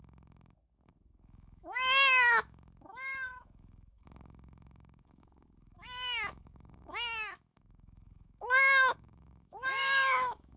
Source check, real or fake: fake